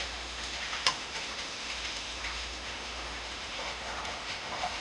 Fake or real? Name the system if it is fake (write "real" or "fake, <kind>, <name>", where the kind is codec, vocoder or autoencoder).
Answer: fake, autoencoder, DAC-VAE